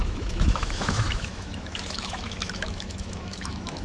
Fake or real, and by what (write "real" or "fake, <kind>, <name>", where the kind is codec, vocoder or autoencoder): fake, autoencoder, DAC-VAE